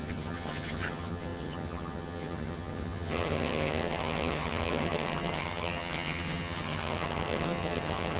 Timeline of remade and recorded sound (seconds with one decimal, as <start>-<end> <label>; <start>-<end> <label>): 0.0-8.2 remade